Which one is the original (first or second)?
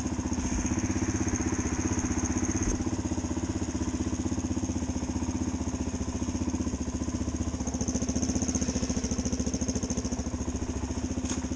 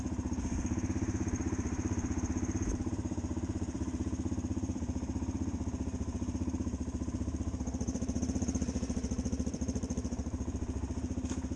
first